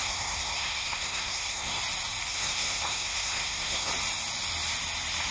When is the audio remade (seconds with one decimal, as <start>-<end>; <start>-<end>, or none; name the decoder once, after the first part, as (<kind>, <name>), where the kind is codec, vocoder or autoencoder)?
0.0-1.8 (codec, SNAC); 2.3-3.9